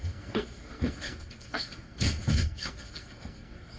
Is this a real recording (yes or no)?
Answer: no